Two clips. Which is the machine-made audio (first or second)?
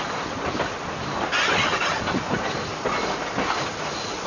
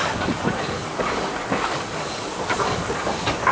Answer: second